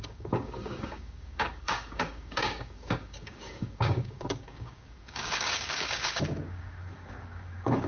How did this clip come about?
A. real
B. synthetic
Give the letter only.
B